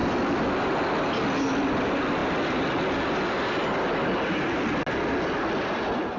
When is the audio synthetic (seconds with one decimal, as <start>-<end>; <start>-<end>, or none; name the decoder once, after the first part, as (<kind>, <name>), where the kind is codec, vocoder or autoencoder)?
none